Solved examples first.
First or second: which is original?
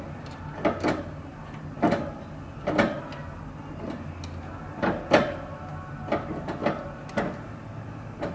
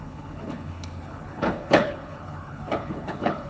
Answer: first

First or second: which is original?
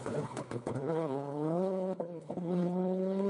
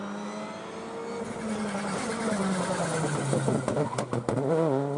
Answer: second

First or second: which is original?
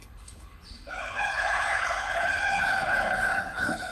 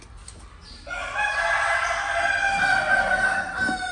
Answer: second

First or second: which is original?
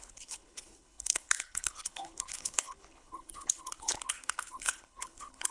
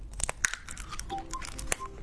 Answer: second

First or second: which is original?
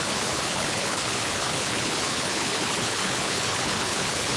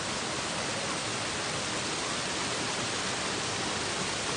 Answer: second